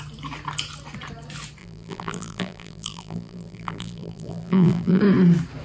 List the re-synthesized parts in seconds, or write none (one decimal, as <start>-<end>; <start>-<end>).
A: 1.6-5.0